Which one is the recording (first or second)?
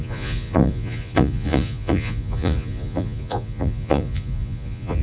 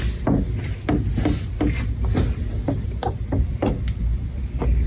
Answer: second